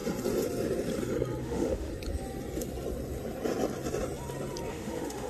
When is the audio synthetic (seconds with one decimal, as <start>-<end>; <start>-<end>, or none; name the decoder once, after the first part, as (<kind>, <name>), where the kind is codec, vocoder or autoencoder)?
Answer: 1.4-1.9 (autoencoder, DAC-VAE); 4.7-5.3